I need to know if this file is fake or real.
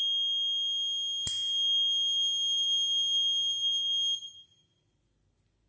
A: real